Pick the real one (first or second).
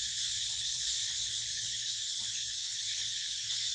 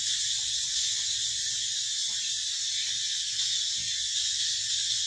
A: second